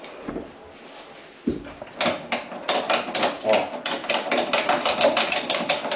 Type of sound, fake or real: real